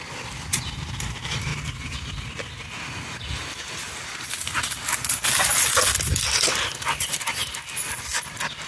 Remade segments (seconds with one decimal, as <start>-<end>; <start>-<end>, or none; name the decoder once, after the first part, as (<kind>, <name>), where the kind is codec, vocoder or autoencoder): 0.0-1.5 (vocoder, BigVGAN v2); 6.2-8.7